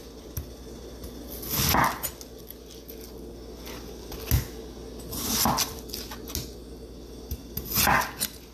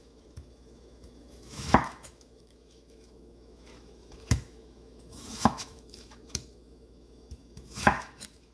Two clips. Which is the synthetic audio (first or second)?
second